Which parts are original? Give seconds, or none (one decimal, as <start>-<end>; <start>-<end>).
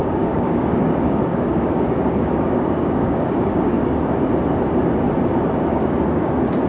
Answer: 4.0-5.7